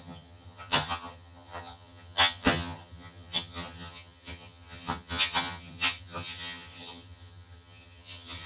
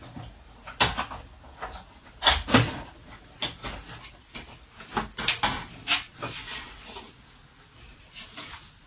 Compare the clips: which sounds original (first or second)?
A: second